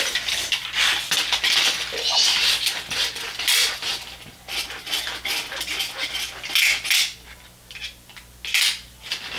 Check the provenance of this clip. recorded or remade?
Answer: recorded